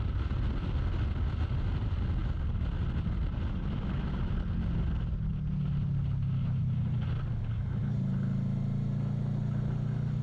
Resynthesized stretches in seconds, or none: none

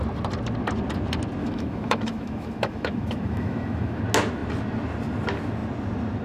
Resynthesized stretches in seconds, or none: 1.4-4.0 (autoencoder, DAC-VAE)

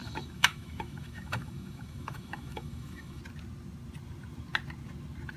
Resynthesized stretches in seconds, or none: 0.0-3.2 (autoencoder, DAC-VAE)

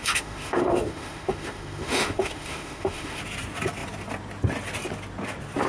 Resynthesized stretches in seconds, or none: 0.0-3.2 (autoencoder, DAC-VAE)